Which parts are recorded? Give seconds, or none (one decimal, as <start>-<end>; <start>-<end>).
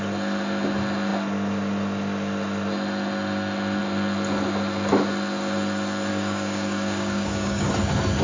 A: 0.0-6.1; 7.7-8.2